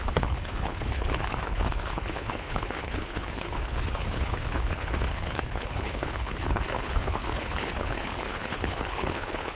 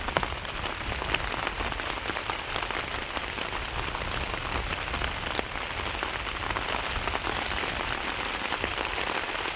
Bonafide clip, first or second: second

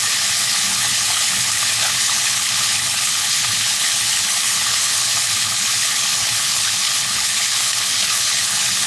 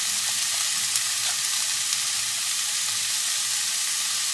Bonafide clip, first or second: second